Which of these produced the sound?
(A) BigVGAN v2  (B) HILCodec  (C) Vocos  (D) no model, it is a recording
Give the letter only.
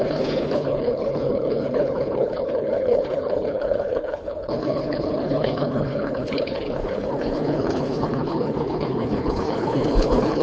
B